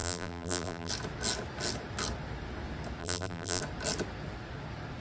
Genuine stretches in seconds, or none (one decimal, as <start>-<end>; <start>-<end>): 0.9-3.0; 3.6-5.0